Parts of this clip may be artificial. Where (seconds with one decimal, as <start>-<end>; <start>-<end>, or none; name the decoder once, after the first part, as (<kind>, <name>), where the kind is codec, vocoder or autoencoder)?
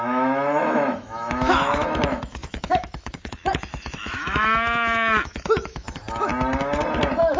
0.0-6.3 (autoencoder, DAC-VAE)